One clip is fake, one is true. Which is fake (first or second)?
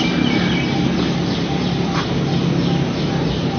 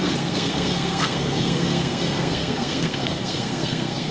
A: second